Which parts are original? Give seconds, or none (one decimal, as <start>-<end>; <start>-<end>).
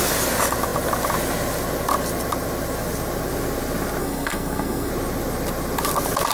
0.0-4.0; 4.9-6.3